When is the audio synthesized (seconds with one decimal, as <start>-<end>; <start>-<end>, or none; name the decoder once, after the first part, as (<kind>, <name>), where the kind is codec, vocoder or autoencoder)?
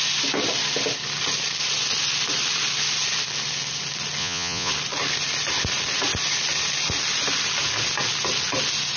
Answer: 4.2-4.7 (vocoder, Vocos)